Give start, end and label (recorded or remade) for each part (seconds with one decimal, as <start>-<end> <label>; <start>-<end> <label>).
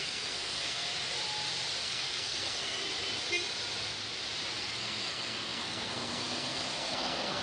0.0-0.9 remade; 0.9-1.8 recorded; 1.8-2.8 remade; 2.8-4.6 recorded; 4.6-7.4 remade